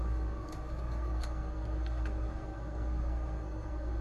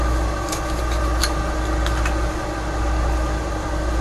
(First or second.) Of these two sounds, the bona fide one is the second